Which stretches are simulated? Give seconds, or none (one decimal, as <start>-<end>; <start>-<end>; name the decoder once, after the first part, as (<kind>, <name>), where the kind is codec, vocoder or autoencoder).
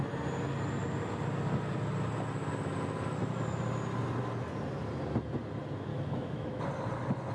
5.9-6.6 (autoencoder, DAC-VAE)